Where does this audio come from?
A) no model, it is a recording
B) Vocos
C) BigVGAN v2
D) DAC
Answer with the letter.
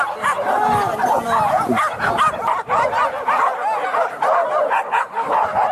A